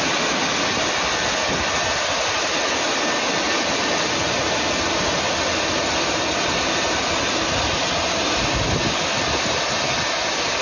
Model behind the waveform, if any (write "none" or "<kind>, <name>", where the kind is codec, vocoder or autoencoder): none